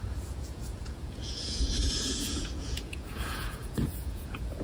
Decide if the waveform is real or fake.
fake